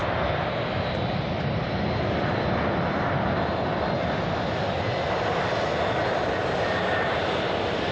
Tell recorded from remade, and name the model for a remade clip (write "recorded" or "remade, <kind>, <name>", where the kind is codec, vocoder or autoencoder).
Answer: recorded